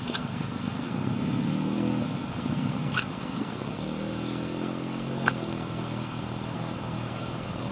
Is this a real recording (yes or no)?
no